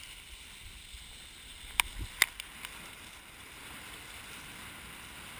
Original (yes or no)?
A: yes